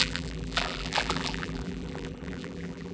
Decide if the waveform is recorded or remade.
remade